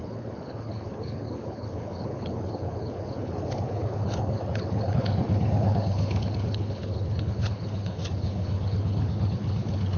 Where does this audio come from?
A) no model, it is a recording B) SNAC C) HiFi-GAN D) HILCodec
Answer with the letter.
D